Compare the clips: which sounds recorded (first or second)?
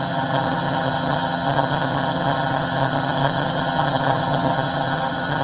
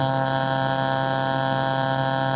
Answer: second